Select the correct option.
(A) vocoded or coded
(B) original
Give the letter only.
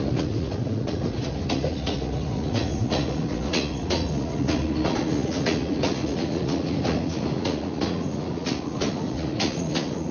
A